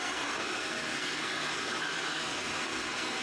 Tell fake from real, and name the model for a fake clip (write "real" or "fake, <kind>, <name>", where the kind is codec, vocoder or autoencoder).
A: fake, codec, SNAC